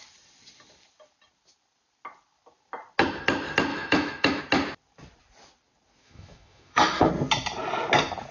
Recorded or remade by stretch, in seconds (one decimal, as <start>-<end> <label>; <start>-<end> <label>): 0.0-3.7 recorded; 3.7-4.4 remade; 4.4-6.0 recorded; 6.0-7.1 remade; 7.1-8.3 recorded